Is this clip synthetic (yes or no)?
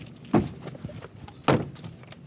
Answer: no